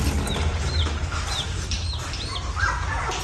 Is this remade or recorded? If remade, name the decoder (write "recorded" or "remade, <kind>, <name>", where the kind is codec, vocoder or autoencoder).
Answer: recorded